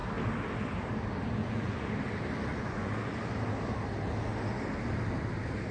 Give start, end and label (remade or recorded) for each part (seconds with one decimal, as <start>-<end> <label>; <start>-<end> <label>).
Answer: 0.0-1.4 recorded; 1.4-1.9 remade; 1.9-2.5 recorded; 2.5-3.1 remade; 3.1-5.7 recorded